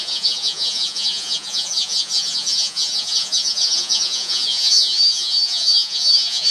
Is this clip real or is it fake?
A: fake